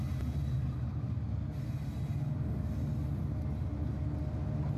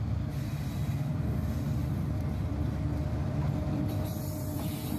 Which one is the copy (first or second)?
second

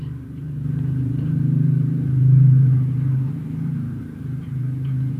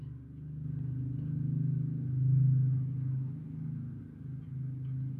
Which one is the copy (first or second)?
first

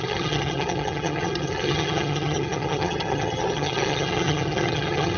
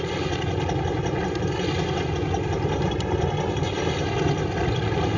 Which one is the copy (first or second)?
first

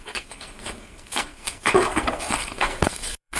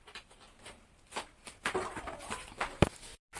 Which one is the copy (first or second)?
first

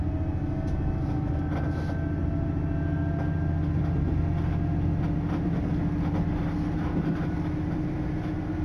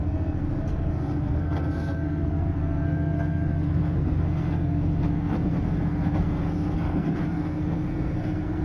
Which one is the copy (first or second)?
second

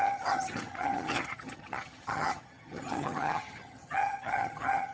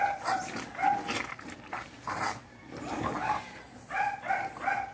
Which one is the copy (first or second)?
first